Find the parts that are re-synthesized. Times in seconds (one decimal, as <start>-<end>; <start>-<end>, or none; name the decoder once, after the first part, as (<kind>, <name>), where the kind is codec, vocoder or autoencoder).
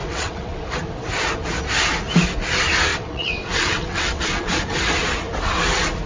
0.0-0.6 (vocoder, WaveNeXt); 2.9-4.5